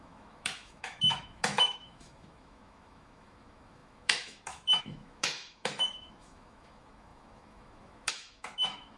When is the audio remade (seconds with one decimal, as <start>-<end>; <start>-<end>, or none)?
0.0-9.0